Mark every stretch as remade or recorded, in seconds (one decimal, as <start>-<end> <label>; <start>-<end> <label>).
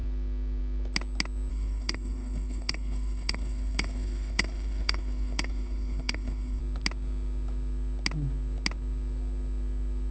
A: 0.0-1.5 recorded; 1.5-6.6 remade; 6.6-10.1 recorded